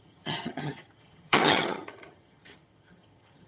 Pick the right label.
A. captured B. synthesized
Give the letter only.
B